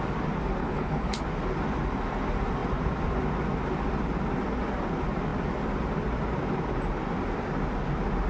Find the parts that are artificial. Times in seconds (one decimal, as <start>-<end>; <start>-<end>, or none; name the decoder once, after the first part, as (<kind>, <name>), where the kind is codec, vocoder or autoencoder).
0.6-1.2 (codec, HILCodec)

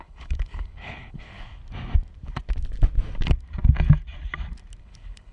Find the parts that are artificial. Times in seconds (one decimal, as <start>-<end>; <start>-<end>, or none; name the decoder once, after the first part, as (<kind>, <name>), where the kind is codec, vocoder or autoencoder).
0.0-1.6 (codec, HILCodec); 4.8-5.3

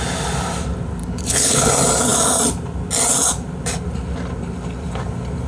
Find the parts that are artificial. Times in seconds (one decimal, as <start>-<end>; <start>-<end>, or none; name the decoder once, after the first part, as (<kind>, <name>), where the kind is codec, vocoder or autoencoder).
1.0-1.7 (codec, HILCodec)

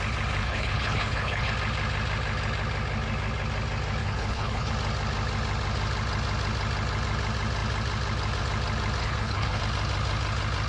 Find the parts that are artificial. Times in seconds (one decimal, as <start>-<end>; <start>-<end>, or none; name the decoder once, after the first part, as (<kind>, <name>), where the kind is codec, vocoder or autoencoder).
0.4-1.5 (codec, HILCodec); 4.0-4.7; 9.0-9.6

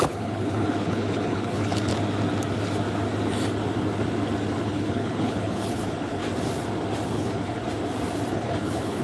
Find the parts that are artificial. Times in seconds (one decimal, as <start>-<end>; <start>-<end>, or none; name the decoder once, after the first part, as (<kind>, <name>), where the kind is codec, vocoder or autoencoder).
0.0-1.9 (codec, HILCodec); 4.6-6.2; 7.1-7.6; 8.3-9.0

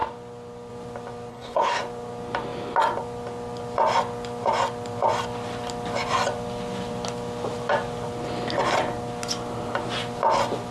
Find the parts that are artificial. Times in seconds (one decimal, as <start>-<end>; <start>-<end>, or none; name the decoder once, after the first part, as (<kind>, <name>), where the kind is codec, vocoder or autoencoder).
1.3-1.8 (codec, HILCodec)